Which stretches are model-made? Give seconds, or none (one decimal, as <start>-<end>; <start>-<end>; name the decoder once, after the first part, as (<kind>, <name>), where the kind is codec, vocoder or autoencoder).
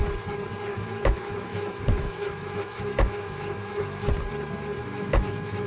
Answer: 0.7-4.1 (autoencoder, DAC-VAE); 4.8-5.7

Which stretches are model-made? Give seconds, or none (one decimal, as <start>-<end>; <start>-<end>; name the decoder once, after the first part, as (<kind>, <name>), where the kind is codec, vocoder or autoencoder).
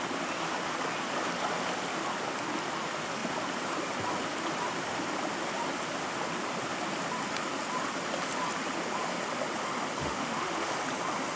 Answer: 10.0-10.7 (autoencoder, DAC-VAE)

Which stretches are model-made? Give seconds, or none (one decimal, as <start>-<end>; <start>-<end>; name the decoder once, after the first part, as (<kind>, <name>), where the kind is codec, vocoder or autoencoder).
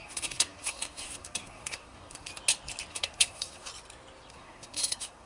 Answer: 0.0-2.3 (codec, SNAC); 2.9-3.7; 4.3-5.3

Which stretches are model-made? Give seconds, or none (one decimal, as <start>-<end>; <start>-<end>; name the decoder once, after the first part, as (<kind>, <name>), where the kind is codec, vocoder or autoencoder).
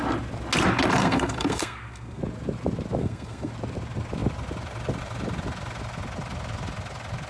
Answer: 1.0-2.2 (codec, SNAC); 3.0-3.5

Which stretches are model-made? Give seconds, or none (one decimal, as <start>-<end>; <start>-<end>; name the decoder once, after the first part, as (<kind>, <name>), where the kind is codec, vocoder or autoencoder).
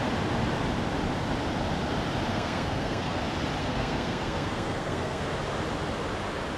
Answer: 2.3-3.2 (codec, SNAC); 3.6-5.2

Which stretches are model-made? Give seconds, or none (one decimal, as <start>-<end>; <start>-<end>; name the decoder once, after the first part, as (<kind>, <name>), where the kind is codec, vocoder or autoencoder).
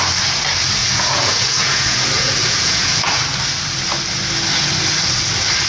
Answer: 0.8-3.2 (vocoder, Vocos)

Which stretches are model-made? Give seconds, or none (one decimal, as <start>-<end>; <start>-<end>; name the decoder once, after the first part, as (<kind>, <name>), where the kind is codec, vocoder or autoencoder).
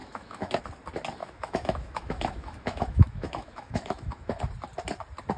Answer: 0.0-0.6 (autoencoder, DAC-VAE); 1.2-4.4